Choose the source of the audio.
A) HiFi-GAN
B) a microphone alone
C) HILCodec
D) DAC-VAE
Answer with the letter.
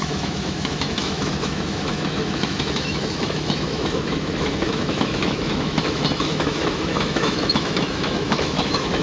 D